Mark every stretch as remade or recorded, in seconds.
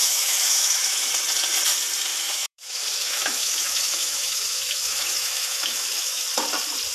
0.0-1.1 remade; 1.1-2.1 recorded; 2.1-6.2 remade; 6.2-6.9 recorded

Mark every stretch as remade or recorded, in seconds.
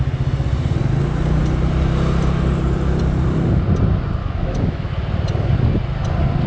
0.0-4.2 recorded; 4.2-4.9 remade; 4.9-6.5 recorded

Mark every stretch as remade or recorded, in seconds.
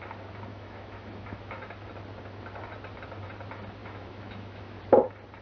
0.0-0.5 recorded; 0.5-1.5 remade; 1.5-3.8 recorded; 3.8-4.8 remade; 4.8-5.4 recorded